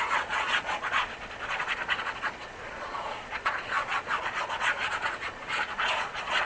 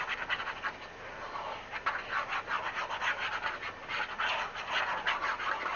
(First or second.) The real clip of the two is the second